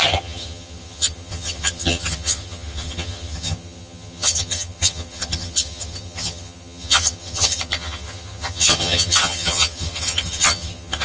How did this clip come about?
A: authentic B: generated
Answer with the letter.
B